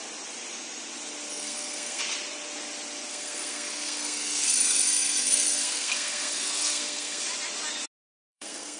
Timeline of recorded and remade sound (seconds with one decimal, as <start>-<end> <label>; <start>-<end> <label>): 0.0-1.3 recorded; 1.3-2.0 remade; 2.0-3.1 recorded; 3.1-7.2 remade; 7.2-8.0 recorded; 8.0-8.8 remade

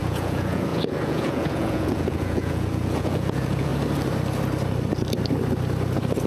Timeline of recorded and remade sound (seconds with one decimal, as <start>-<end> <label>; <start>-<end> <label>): 0.0-3.7 remade; 3.7-6.3 recorded

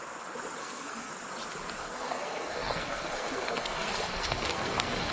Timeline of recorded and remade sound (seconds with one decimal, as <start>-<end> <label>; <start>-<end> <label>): 0.0-0.6 recorded; 0.6-1.1 remade; 1.1-1.8 recorded; 1.8-5.1 remade